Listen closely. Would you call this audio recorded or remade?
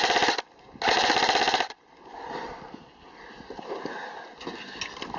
recorded